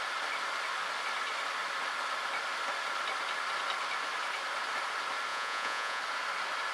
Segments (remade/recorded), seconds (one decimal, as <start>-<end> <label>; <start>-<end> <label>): 0.0-5.3 recorded; 5.3-6.0 remade; 6.0-6.7 recorded